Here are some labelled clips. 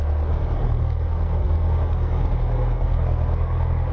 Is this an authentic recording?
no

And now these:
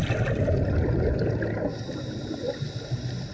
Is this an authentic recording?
yes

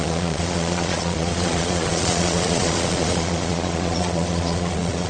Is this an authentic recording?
no